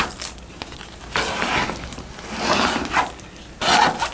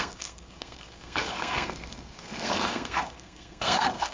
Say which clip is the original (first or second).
first